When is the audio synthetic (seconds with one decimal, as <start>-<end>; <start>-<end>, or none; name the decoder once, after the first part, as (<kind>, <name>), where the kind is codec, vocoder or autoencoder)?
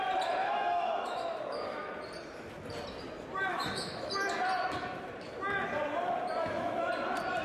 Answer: 0.4-1.9 (autoencoder, DAC-VAE); 3.5-4.1; 6.4-6.9